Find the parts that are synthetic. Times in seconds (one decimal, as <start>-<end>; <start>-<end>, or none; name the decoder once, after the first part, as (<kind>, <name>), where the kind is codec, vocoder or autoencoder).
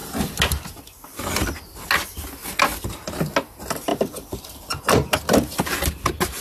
3.9-4.8 (vocoder, BigVGAN v2)